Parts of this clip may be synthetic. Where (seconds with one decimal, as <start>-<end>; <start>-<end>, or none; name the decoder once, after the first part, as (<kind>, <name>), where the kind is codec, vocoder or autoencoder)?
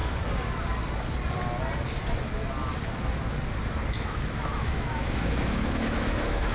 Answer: 3.9-6.5 (autoencoder, DAC-VAE)